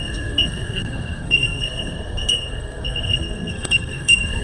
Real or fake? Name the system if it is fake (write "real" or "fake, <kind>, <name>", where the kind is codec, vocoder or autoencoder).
fake, codec, SNAC